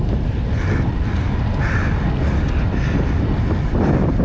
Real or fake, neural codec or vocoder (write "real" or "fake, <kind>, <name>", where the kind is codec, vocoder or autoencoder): fake, vocoder, BigVGAN v2